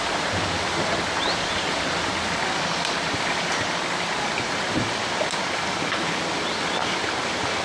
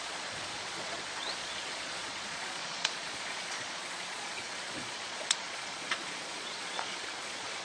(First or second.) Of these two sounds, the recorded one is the first